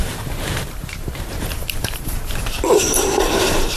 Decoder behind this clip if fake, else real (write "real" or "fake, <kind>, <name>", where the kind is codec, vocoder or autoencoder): fake, vocoder, BigVGAN v2